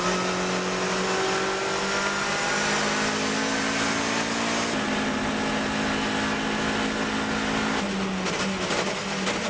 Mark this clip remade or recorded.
recorded